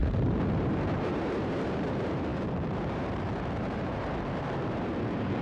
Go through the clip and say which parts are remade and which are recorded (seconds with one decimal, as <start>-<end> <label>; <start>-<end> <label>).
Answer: 0.0-5.4 remade